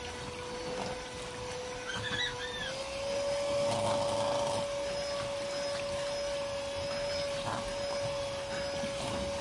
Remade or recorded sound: recorded